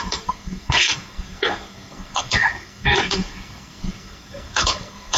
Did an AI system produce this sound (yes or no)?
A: yes